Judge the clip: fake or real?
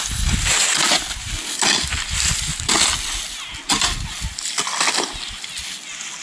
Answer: real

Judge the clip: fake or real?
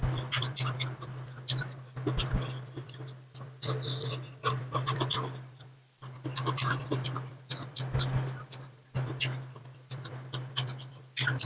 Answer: real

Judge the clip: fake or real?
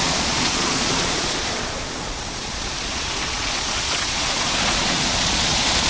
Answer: fake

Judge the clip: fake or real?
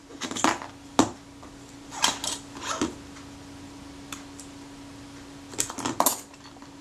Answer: real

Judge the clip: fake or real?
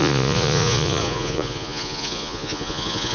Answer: fake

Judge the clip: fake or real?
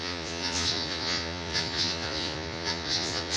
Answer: fake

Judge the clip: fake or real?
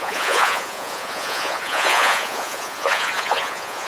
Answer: fake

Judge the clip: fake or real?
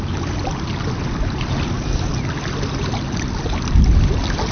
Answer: real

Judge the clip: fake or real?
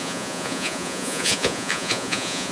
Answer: fake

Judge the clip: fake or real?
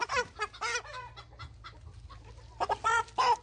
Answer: real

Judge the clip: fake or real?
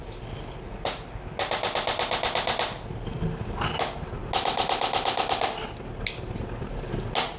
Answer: real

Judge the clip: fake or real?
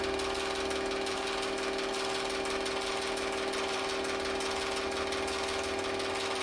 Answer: real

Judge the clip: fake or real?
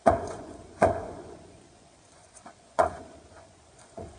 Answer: fake